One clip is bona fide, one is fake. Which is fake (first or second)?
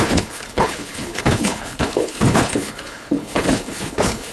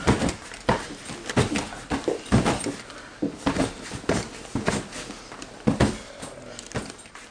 first